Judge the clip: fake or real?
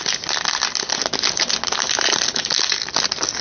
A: real